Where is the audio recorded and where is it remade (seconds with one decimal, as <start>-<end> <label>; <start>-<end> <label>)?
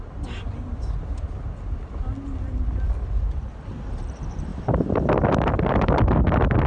0.0-6.7 recorded